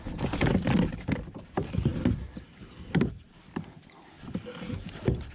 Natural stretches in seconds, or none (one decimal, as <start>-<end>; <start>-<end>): 0.0-5.3